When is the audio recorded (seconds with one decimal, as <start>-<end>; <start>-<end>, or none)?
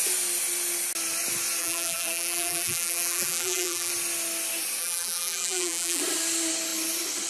0.0-1.6; 3.9-4.8; 6.0-7.3